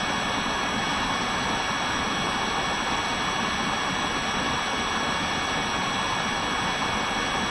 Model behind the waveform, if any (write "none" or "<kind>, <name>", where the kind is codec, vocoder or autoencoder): none